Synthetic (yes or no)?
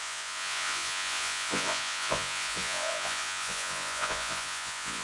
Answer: yes